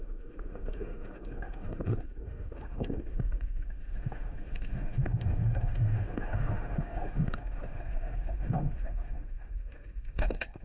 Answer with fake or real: fake